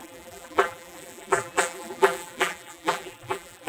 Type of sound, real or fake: fake